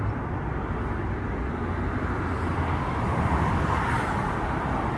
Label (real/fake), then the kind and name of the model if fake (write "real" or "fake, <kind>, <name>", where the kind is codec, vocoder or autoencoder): real